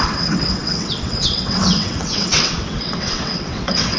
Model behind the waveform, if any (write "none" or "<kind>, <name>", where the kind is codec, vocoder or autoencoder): vocoder, WaveNeXt